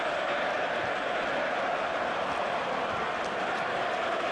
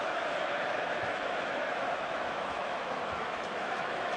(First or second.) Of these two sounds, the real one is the first